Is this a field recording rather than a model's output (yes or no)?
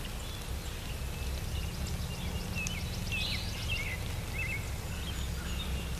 yes